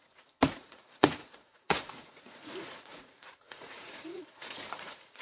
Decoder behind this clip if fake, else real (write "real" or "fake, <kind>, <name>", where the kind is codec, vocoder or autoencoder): fake, vocoder, Vocos